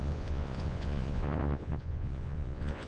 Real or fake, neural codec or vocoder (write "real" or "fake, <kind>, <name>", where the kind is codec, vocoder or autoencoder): fake, vocoder, Vocos